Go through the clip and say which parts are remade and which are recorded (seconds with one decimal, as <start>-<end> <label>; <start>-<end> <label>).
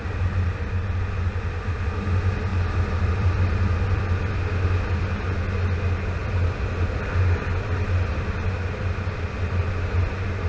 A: 0.0-2.5 recorded; 2.5-4.3 remade; 4.3-10.5 recorded